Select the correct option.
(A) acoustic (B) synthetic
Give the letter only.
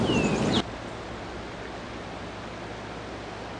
A